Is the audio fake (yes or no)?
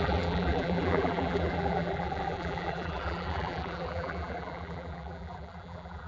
yes